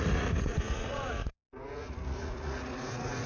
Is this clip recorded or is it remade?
remade